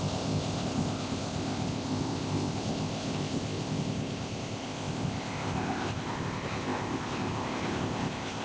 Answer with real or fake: fake